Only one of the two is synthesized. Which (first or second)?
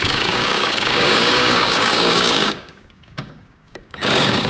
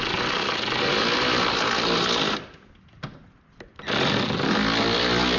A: first